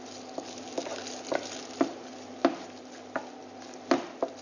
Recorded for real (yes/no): yes